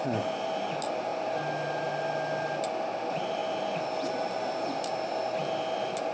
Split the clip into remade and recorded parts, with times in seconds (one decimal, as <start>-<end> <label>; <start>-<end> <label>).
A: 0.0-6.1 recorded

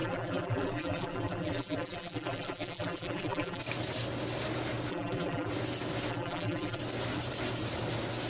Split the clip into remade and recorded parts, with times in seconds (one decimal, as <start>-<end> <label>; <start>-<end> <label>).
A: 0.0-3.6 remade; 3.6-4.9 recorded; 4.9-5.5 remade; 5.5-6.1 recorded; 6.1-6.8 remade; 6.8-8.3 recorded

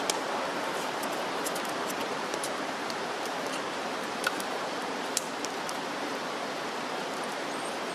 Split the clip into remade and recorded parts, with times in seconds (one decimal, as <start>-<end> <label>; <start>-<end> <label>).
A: 0.0-0.5 recorded; 0.5-1.4 remade; 1.4-2.0 recorded; 2.0-5.1 remade; 5.1-7.9 recorded

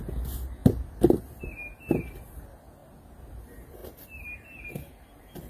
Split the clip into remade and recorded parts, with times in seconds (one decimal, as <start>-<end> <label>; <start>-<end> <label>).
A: 0.0-5.5 recorded